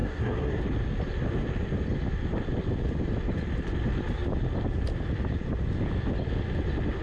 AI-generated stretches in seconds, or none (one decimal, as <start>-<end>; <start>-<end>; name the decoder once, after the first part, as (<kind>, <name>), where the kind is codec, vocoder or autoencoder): 0.0-0.6 (codec, SNAC)